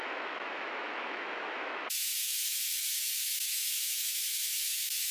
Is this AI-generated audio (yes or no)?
yes